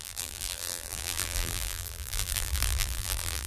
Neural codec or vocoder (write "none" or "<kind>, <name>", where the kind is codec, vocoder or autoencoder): vocoder, BigVGAN v2